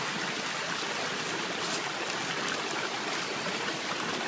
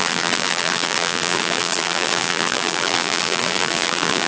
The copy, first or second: second